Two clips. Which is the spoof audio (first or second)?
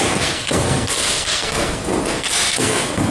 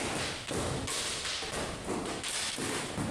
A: first